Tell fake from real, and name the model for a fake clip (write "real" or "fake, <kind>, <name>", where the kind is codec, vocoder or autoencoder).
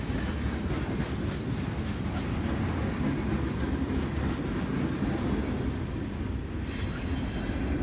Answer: real